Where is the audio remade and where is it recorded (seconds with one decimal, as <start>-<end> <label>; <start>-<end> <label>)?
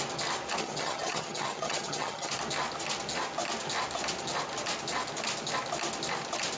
0.0-0.6 recorded; 0.6-2.3 remade; 2.3-6.6 recorded